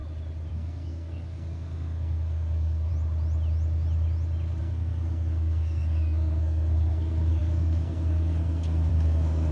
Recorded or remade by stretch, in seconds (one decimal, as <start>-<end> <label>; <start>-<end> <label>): 0.0-0.5 recorded; 0.5-2.9 remade; 2.9-4.6 recorded; 4.6-9.5 remade